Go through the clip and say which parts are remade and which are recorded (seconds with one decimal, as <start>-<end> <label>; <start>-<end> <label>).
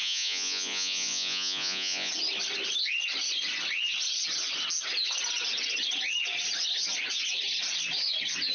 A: 0.0-2.1 remade; 2.1-8.5 recorded